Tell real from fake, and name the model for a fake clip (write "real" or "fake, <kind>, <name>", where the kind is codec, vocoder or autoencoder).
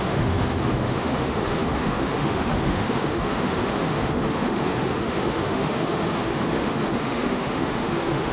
fake, autoencoder, DAC-VAE